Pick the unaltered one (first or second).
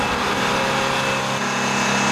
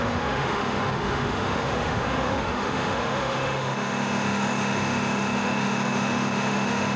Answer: first